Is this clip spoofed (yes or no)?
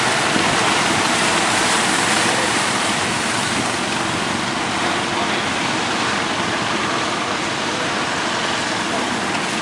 no